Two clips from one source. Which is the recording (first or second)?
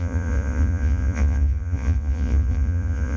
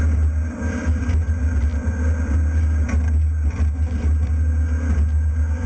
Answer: second